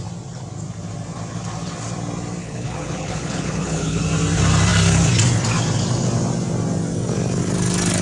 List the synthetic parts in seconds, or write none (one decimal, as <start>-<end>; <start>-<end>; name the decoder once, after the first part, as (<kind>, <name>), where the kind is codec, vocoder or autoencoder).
2.4-4.0 (codec, HILCodec)